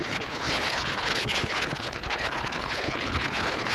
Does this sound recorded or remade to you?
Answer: remade